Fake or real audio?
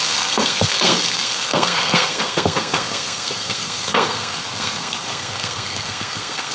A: fake